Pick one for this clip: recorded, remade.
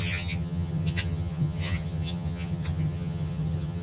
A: remade